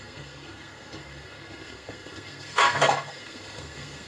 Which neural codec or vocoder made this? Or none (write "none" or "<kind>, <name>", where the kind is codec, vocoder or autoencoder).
codec, SNAC